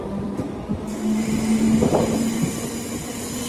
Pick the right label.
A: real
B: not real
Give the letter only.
A